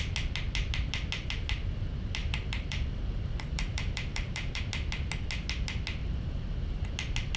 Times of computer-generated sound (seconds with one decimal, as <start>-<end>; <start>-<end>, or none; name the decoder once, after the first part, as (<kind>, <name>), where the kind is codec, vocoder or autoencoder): 2.2-4.6 (vocoder, BigVGAN v2); 6.0-6.9